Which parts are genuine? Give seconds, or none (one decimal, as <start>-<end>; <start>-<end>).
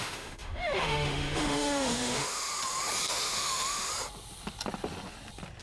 2.5-3.1; 3.9-5.6